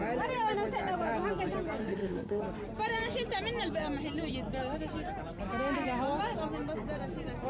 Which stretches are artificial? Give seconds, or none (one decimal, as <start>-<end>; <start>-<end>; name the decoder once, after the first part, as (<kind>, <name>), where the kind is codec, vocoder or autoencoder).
1.8-2.4 (codec, SNAC)